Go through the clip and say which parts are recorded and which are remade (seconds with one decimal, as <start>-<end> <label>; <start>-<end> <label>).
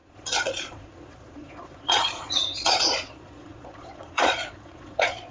0.0-5.3 remade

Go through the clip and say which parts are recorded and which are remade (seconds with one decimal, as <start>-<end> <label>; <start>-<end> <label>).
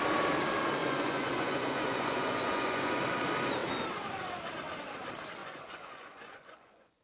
0.0-0.8 recorded; 0.8-3.0 remade; 3.0-5.4 recorded; 5.4-7.0 remade